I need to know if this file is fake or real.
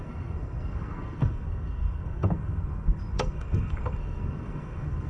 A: fake